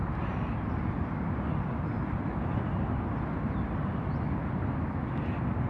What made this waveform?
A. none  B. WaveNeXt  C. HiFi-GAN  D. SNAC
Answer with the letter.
A